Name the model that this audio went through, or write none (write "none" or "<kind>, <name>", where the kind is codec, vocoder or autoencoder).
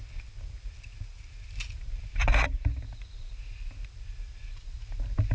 none